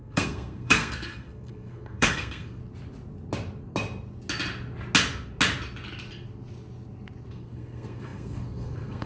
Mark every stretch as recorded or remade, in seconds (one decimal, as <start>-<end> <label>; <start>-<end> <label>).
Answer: 0.0-2.6 remade; 2.6-7.3 recorded; 7.3-9.1 remade